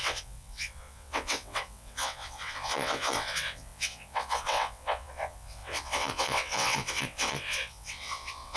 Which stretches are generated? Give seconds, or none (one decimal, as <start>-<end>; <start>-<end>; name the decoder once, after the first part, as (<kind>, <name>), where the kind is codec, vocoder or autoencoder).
0.0-8.6 (vocoder, WaveNeXt)